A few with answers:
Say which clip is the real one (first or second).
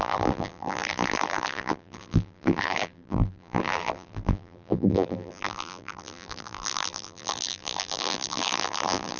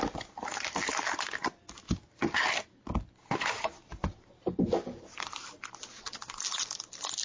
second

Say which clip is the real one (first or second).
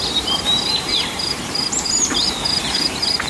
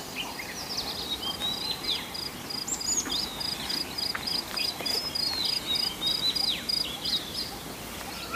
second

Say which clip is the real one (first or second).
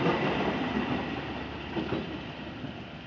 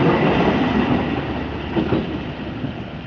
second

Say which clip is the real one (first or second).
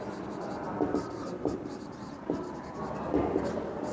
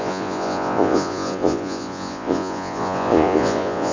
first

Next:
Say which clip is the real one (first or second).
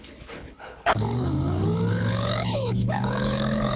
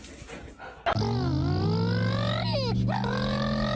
second